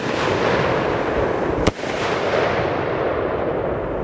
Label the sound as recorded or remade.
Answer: recorded